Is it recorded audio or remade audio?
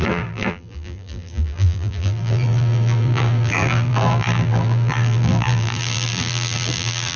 remade